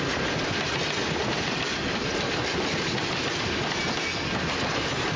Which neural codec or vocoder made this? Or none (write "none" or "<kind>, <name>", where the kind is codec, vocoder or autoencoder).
none